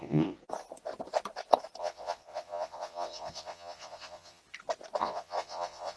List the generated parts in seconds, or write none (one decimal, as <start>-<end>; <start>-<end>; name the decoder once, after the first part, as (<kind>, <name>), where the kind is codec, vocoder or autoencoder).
0.0-0.4 (vocoder, Vocos); 1.8-4.4; 5.0-6.0